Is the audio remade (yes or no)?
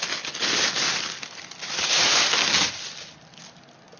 no